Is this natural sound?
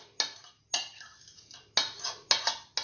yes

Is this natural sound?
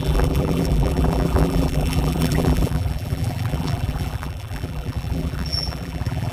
no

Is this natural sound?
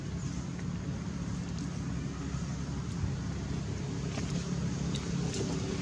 yes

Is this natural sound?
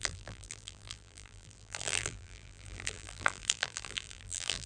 no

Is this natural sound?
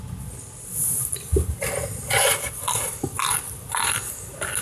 yes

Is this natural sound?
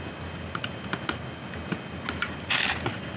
yes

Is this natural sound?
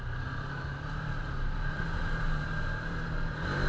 no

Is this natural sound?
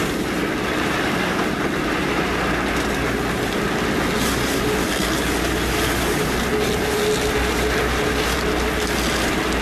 yes